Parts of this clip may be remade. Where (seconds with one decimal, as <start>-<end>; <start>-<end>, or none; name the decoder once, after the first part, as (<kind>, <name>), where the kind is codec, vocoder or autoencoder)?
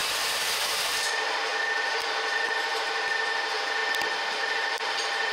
0.0-3.8 (vocoder, BigVGAN v2); 4.3-5.3